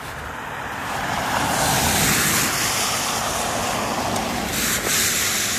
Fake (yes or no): yes